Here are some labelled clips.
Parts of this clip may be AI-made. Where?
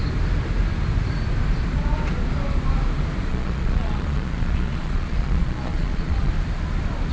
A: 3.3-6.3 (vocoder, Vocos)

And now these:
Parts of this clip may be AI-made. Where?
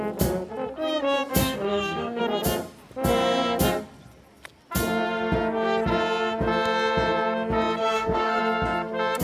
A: 1.4-2.2 (codec, DAC); 7.8-8.4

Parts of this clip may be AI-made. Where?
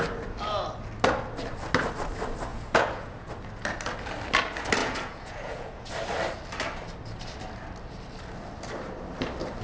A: 2.5-3.3 (vocoder, Vocos); 4.8-5.9